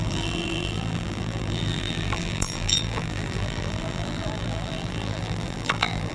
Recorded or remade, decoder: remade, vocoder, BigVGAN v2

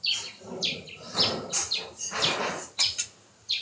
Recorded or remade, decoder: recorded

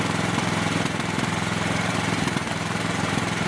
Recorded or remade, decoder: remade, vocoder, BigVGAN v2